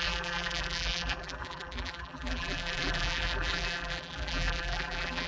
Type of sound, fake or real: fake